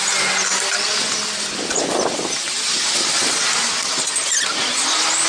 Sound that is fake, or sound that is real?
real